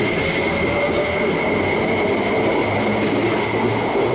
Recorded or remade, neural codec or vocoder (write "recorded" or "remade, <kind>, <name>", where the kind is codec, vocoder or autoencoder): recorded